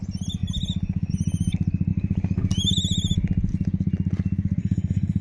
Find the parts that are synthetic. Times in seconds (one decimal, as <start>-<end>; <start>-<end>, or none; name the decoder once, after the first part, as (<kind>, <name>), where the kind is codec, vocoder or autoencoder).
4.6-5.2 (codec, SNAC)